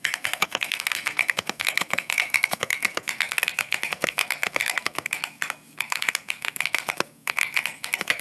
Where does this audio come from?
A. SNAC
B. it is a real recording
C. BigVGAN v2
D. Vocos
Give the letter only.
A